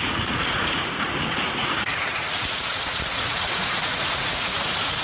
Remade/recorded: remade